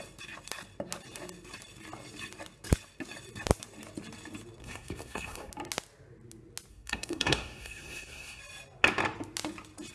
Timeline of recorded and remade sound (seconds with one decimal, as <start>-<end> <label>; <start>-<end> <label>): 0.0-4.6 recorded; 4.6-5.5 remade; 5.5-6.7 recorded; 6.7-8.4 remade; 8.4-9.9 recorded